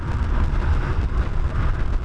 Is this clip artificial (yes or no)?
no